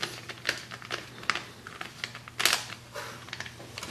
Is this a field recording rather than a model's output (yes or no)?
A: yes